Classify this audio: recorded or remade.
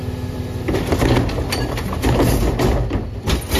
recorded